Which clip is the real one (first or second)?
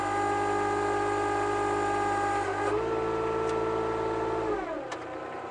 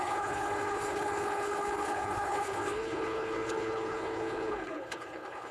first